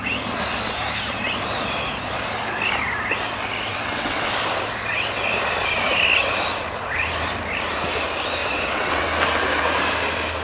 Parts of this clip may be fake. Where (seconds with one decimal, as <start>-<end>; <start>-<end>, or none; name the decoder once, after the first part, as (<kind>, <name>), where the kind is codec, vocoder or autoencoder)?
3.7-4.3 (vocoder, WaveNeXt); 8.4-9.0